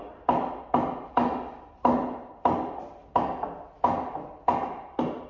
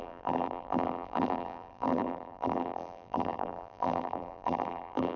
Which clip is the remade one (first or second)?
second